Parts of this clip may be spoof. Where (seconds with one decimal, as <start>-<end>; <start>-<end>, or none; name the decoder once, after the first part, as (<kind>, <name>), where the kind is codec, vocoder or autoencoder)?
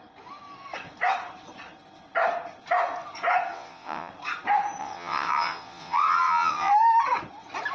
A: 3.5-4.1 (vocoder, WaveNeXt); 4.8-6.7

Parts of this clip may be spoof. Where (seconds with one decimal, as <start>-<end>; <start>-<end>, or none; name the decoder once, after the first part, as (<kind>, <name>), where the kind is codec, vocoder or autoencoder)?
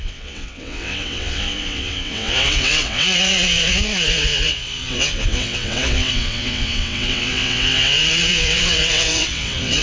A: 0.0-9.8 (vocoder, WaveNeXt)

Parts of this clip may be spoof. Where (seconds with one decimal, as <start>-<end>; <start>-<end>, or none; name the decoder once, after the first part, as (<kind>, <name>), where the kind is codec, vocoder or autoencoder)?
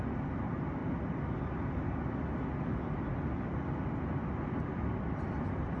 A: none